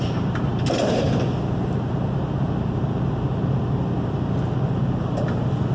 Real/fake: real